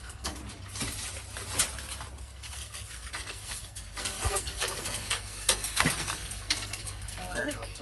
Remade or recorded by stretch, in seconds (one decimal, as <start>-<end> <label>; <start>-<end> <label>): 0.0-0.4 remade; 0.4-2.2 recorded; 2.2-7.8 remade

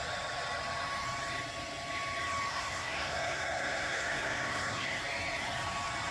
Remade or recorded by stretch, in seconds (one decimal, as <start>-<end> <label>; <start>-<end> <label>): 0.0-2.5 recorded; 2.5-5.0 remade; 5.0-6.1 recorded

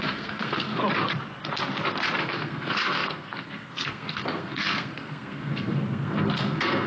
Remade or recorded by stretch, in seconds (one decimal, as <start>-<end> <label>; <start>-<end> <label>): 0.0-0.8 remade; 0.8-2.2 recorded; 2.2-6.9 remade

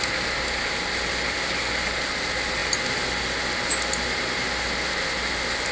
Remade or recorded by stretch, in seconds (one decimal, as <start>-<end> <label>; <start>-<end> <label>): 0.0-5.7 recorded

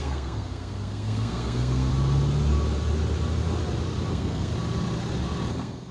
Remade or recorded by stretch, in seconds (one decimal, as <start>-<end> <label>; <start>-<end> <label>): 0.0-1.9 remade; 1.9-4.1 recorded; 4.1-4.5 remade; 4.5-5.5 recorded; 5.5-5.9 remade

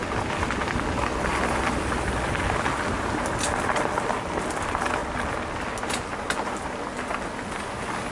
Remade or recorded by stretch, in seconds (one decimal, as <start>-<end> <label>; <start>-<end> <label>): 0.0-8.1 recorded